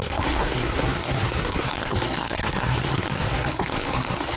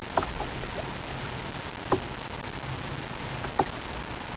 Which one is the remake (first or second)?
first